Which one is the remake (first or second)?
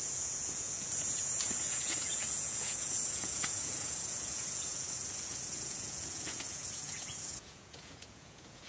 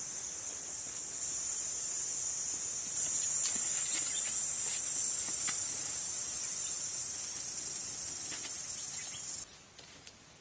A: first